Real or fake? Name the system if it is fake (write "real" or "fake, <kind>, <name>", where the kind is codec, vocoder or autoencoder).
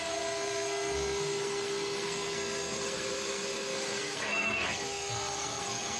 fake, codec, SNAC